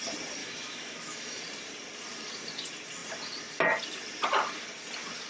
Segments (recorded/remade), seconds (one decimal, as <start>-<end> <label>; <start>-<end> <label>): 0.0-0.4 recorded; 0.4-1.4 remade; 1.4-5.3 recorded